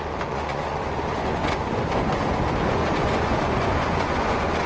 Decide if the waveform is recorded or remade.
remade